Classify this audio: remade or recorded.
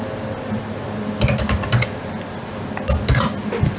recorded